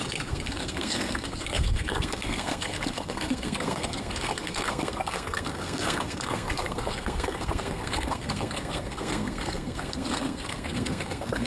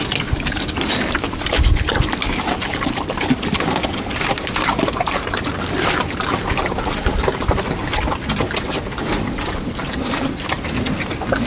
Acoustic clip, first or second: second